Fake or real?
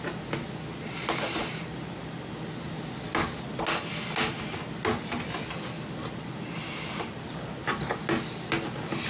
real